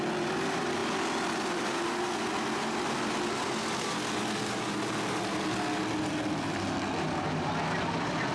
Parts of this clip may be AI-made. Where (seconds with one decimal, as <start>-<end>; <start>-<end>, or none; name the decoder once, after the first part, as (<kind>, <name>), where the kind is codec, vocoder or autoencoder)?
none